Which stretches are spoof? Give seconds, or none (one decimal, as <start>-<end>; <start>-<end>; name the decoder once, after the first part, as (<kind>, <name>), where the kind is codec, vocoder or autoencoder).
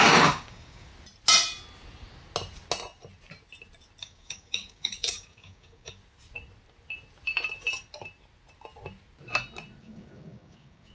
0.0-0.9 (codec, DAC); 4.0-6.0; 9.8-10.9